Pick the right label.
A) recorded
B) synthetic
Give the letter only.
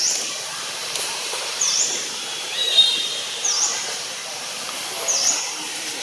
B